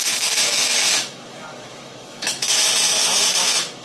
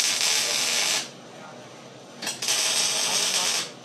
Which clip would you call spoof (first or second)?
first